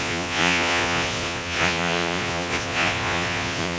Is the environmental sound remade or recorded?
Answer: remade